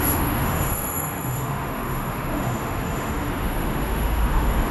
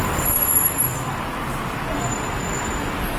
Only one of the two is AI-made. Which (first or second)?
first